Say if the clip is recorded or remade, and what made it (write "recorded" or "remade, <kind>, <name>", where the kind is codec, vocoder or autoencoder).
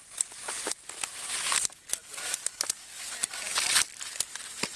recorded